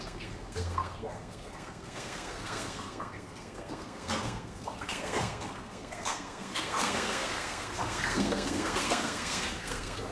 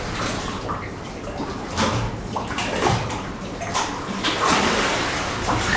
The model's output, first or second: first